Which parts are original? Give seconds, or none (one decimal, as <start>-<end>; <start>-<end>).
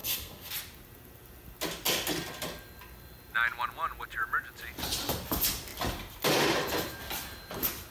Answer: 0.5-7.9